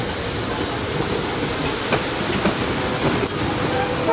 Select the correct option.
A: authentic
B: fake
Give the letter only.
A